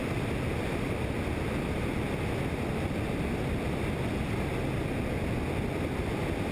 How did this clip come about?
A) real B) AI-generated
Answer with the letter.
A